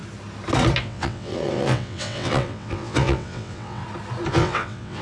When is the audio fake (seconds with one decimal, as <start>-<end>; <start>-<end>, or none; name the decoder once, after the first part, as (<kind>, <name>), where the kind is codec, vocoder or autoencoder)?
0.8-3.8 (vocoder, WaveNeXt); 4.3-5.0

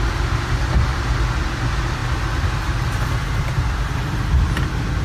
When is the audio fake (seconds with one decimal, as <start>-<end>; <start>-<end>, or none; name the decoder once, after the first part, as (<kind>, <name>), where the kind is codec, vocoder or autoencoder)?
none